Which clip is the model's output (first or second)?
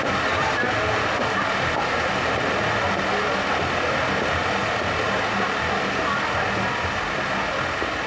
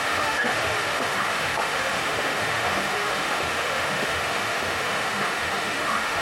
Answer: second